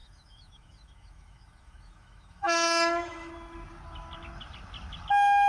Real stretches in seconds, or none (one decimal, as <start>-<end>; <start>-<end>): 3.3-5.5